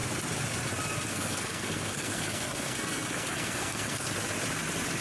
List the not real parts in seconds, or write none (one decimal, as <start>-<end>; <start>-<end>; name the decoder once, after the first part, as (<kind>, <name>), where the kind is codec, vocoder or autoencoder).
1.1-4.1 (codec, SNAC)